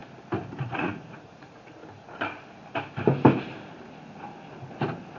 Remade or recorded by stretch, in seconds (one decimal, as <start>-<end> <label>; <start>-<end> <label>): 0.0-0.6 recorded; 0.6-1.8 remade; 1.8-5.2 recorded